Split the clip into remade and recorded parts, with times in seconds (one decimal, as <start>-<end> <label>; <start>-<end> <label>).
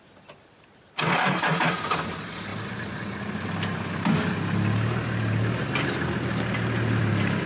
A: 0.0-7.5 recorded